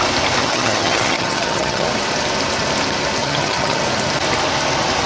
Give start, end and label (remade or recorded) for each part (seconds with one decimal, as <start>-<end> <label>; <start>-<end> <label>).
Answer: 0.0-0.4 recorded; 0.4-1.9 remade; 1.9-3.2 recorded; 3.2-3.8 remade; 3.8-5.1 recorded